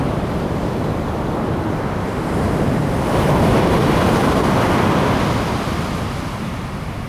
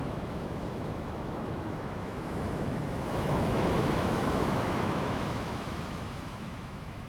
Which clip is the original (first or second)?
first